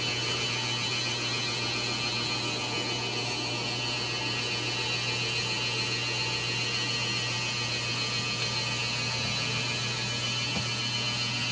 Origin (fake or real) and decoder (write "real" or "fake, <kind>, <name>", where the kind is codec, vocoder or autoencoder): real